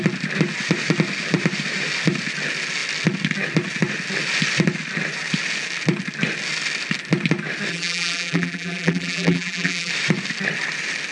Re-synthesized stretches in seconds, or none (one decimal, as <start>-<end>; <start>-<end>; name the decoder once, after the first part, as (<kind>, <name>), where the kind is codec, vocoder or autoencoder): 7.7-9.9 (vocoder, BigVGAN v2)